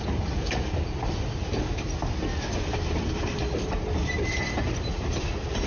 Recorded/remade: recorded